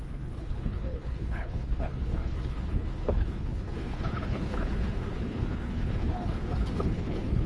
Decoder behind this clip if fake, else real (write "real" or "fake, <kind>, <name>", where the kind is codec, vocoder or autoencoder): fake, codec, HILCodec